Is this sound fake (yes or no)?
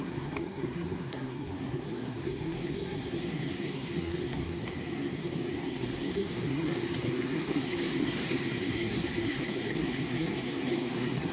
yes